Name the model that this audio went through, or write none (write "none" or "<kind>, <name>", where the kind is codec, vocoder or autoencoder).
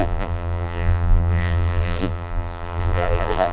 vocoder, BigVGAN v2